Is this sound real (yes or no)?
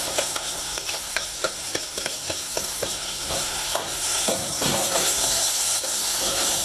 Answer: no